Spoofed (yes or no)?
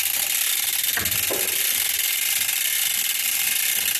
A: no